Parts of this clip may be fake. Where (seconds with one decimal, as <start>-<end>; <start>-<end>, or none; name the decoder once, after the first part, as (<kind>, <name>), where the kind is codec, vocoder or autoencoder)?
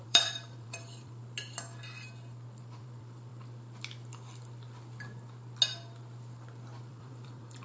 0.0-1.2 (vocoder, BigVGAN v2); 2.6-3.3; 6.8-7.6